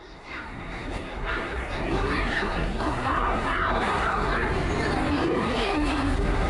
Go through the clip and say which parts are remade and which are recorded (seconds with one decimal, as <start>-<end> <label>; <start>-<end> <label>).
0.0-4.3 remade; 4.3-5.1 recorded; 5.1-6.5 remade